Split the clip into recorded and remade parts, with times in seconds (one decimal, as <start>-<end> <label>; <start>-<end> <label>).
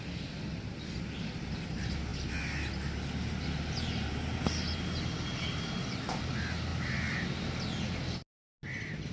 0.0-9.1 recorded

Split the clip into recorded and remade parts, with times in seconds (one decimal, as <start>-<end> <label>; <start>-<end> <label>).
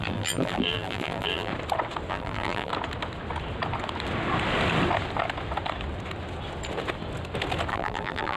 0.0-1.5 remade; 1.5-2.1 recorded; 2.1-2.7 remade; 2.7-7.7 recorded; 7.7-8.4 remade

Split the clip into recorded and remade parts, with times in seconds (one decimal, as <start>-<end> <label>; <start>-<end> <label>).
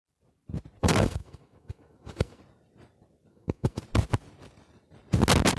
0.0-0.8 recorded; 0.8-2.4 remade; 2.4-3.3 recorded; 3.3-3.8 remade; 3.8-5.6 recorded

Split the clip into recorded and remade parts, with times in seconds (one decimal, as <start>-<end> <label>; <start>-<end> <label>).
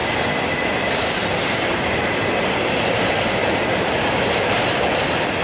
0.0-5.4 recorded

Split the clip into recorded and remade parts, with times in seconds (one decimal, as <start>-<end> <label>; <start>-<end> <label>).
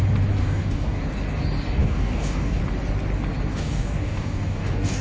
0.0-0.4 recorded; 0.4-1.0 remade; 1.0-1.8 recorded; 1.8-2.6 remade; 2.6-3.5 recorded; 3.5-5.0 remade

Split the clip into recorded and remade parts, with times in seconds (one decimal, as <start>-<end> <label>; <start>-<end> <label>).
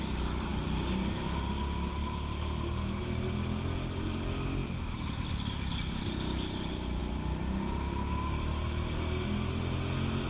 0.0-10.3 recorded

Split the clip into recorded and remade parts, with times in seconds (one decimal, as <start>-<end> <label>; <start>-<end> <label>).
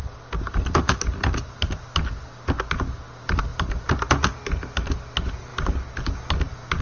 0.0-6.8 recorded